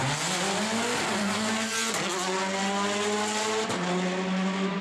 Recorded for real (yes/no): yes